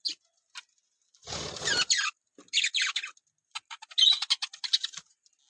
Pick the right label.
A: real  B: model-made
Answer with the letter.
A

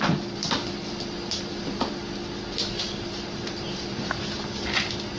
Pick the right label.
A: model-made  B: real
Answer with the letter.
B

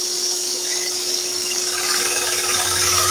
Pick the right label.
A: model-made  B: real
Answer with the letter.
A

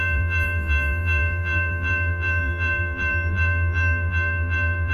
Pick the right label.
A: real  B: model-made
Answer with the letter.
B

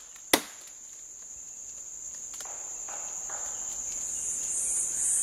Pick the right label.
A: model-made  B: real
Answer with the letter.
B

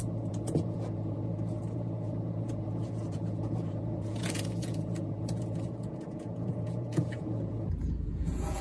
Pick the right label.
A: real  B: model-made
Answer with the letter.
B